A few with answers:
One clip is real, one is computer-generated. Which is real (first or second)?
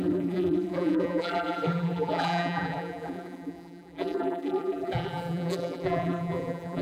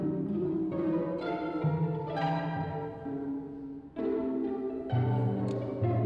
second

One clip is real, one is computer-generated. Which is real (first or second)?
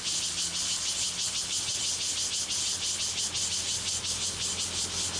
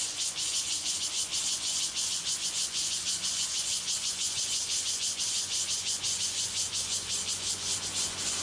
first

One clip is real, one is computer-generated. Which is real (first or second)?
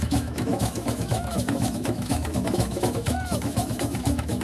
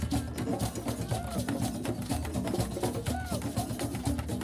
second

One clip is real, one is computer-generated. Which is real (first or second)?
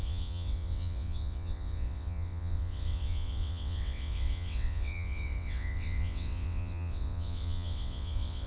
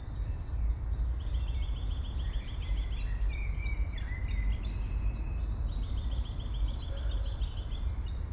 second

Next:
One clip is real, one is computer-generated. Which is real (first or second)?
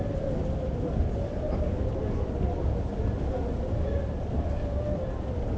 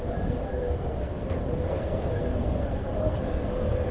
first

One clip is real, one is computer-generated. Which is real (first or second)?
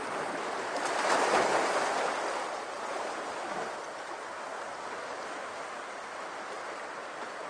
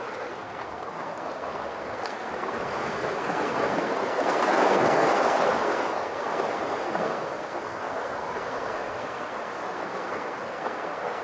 first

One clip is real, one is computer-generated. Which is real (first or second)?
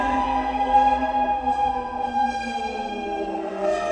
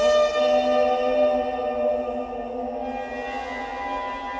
second